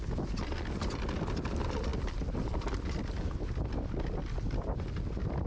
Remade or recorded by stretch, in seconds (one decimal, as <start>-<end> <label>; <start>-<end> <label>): 0.0-5.5 recorded